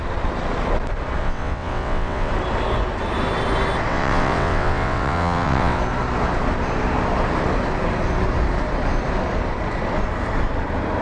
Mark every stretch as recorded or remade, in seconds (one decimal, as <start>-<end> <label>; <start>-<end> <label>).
0.0-1.2 recorded; 1.2-2.3 remade; 2.3-3.9 recorded; 3.9-5.8 remade; 5.8-11.0 recorded